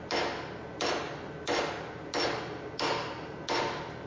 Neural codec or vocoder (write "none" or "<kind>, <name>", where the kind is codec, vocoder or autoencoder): none